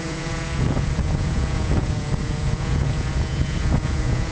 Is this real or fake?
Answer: fake